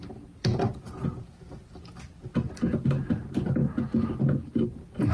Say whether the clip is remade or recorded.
recorded